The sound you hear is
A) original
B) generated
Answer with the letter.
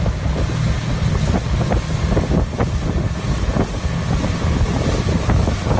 A